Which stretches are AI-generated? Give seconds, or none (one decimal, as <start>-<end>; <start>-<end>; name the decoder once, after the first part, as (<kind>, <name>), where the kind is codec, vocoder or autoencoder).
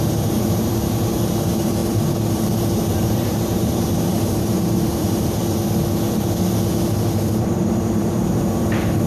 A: 0.0-5.4 (vocoder, BigVGAN v2); 6.9-9.1